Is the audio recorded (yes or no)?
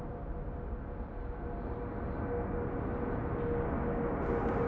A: yes